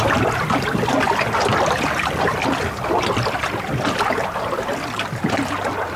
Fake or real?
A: real